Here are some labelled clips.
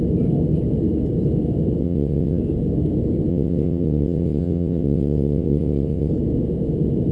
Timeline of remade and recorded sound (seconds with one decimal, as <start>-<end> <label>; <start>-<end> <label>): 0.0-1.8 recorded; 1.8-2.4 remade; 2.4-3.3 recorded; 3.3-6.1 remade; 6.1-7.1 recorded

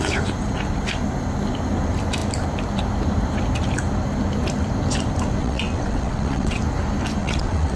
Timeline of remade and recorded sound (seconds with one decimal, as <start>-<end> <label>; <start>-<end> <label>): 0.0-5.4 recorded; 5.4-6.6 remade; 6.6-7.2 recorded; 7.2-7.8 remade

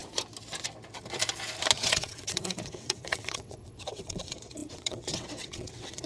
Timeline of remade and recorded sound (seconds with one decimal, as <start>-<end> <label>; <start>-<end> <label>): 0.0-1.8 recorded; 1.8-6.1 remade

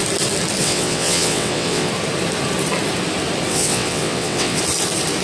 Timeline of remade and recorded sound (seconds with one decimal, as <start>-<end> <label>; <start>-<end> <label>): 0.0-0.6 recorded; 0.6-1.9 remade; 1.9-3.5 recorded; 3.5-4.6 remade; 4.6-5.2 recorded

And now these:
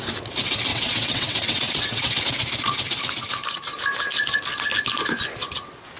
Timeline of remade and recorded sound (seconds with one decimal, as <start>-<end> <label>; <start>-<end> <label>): 0.0-0.7 recorded; 0.7-2.2 remade; 2.2-6.0 recorded